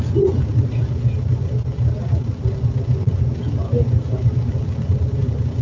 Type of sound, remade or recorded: recorded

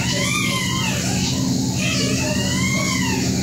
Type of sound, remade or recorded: recorded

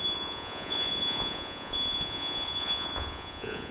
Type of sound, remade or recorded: remade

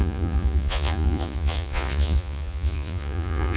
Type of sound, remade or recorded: remade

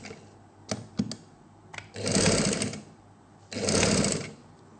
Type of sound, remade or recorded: recorded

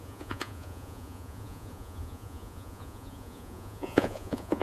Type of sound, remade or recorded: remade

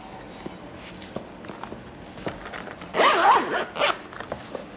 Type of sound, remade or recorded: recorded